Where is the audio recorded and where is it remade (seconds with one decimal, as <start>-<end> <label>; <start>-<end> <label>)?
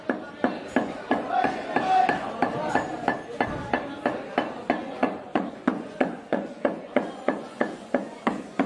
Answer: 0.0-0.8 recorded; 0.8-1.7 remade; 1.7-4.8 recorded; 4.8-8.7 remade